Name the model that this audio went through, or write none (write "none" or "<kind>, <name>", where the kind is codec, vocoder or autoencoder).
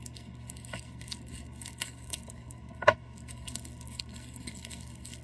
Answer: codec, SNAC